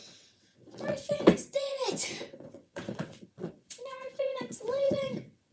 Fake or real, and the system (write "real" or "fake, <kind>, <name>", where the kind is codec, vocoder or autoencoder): fake, vocoder, WaveNeXt